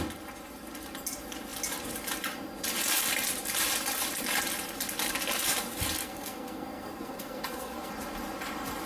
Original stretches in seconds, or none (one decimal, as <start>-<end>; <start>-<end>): 0.0-6.0; 7.9-8.9